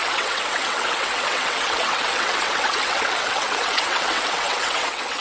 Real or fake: fake